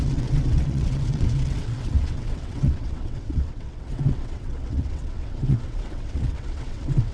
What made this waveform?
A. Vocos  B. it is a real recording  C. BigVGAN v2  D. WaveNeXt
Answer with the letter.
D